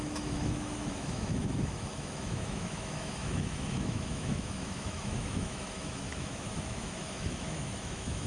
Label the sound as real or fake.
fake